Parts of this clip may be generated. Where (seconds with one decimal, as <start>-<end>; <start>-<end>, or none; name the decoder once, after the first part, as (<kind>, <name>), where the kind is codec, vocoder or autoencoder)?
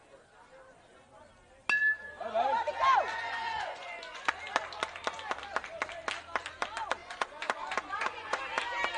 3.1-4.3 (vocoder, Vocos); 7.0-8.4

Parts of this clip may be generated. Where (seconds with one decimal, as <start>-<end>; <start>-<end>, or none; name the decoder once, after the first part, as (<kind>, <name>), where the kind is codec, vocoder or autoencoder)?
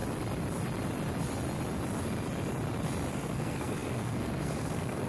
3.1-5.1 (codec, SNAC)